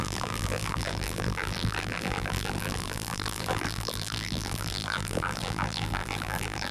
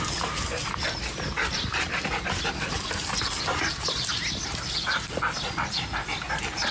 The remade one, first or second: first